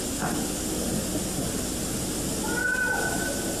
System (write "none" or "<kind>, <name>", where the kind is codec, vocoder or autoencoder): none